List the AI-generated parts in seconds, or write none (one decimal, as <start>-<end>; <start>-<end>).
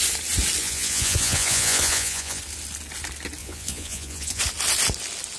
0.6-2.4; 3.4-4.4